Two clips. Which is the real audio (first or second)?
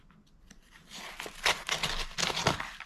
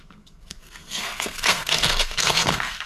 first